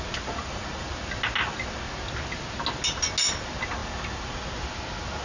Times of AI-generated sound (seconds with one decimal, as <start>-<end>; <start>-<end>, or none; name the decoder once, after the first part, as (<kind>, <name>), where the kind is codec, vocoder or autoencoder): none